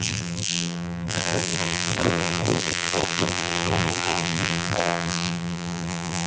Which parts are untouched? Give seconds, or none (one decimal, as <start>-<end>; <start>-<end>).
none